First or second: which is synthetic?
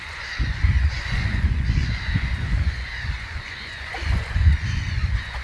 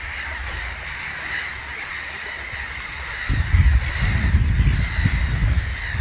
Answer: first